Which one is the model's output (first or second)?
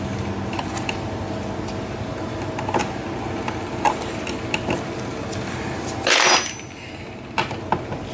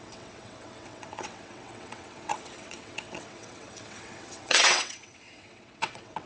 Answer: second